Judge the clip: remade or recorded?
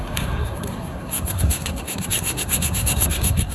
remade